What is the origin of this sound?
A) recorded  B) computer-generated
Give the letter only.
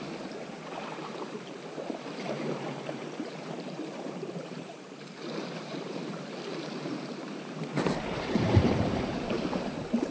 B